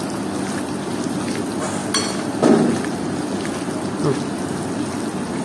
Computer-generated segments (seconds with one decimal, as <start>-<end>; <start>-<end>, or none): none